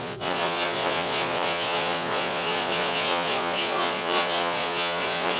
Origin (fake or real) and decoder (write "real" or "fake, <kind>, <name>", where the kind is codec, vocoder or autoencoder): fake, vocoder, Vocos